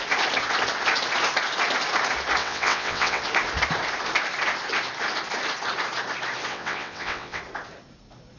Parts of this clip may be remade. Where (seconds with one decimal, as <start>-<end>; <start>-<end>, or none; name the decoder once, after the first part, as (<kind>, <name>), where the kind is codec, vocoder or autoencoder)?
2.4-3.2 (vocoder, WaveNeXt); 6.5-7.4

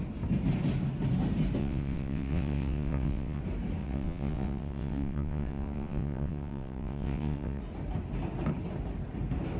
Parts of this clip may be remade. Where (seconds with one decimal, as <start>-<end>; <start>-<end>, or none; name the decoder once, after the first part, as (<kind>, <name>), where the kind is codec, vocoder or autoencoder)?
1.6-3.4 (vocoder, WaveNeXt); 3.8-7.6